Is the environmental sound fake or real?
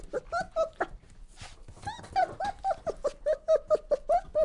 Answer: real